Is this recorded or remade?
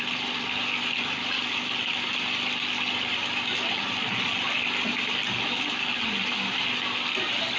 recorded